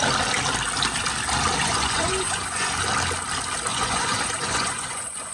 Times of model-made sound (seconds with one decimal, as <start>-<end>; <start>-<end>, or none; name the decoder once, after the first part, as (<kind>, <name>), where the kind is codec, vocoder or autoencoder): 1.6-2.8 (vocoder, Vocos); 3.7-5.3